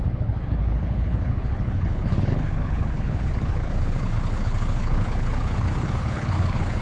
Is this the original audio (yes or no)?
no